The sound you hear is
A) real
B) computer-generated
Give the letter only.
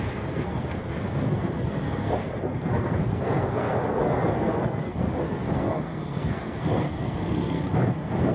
B